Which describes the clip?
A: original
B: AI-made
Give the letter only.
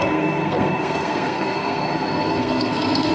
B